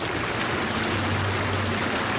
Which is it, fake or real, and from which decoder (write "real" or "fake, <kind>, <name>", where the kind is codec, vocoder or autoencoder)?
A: real